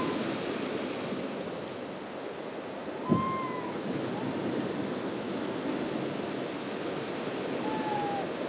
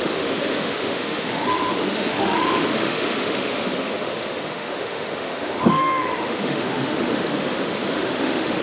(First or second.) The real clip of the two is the first